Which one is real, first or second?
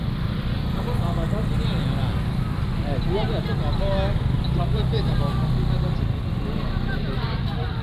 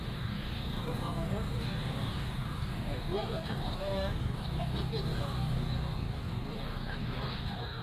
first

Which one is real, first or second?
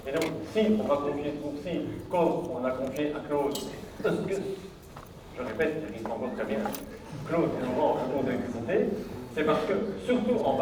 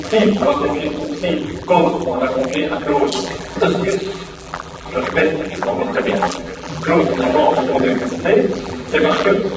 first